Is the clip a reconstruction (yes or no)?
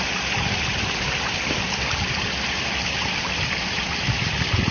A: no